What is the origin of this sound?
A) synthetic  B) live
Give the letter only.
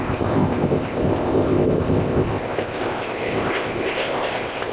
A